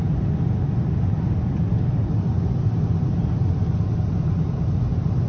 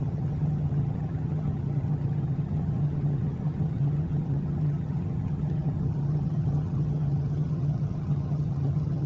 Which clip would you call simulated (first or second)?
second